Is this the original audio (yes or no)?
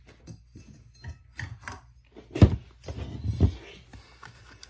yes